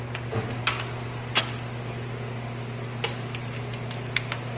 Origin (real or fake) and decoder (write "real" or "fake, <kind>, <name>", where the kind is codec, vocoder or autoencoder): real